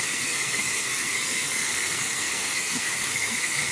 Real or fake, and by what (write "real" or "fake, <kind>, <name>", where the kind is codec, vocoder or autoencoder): fake, codec, SNAC